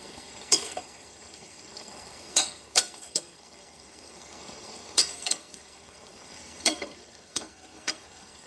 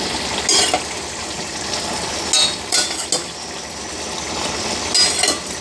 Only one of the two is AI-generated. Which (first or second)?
first